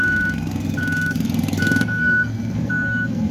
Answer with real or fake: fake